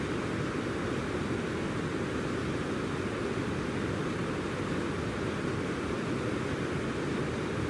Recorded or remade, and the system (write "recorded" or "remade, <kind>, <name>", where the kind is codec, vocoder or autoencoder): recorded